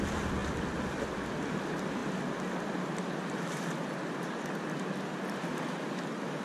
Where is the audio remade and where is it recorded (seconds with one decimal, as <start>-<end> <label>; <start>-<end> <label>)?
0.0-6.4 recorded